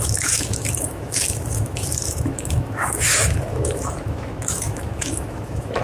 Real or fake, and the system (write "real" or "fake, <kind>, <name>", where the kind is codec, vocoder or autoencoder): fake, autoencoder, DAC-VAE